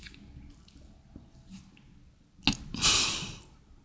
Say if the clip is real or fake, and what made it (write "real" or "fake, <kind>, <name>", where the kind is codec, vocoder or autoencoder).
real